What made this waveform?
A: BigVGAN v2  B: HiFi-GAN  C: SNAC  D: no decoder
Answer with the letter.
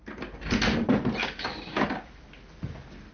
D